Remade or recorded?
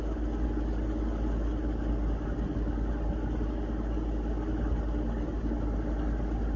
recorded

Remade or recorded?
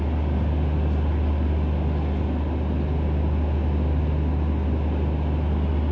recorded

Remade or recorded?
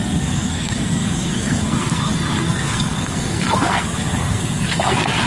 remade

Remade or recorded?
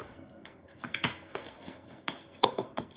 remade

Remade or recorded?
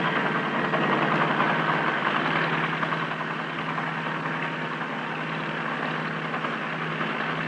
recorded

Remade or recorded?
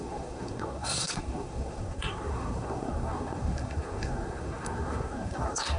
remade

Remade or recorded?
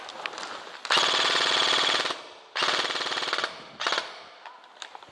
recorded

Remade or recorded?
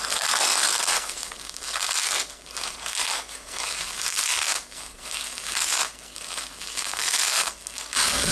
remade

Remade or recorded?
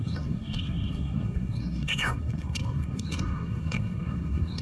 remade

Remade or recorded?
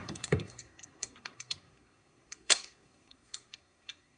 remade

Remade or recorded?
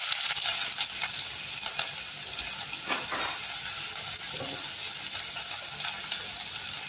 recorded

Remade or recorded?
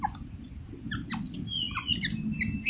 recorded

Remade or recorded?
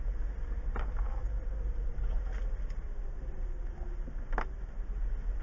recorded